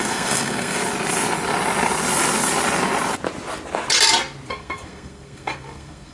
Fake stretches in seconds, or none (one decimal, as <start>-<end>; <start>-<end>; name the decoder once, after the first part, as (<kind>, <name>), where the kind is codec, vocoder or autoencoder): 0.0-0.8 (codec, SNAC); 4.5-6.1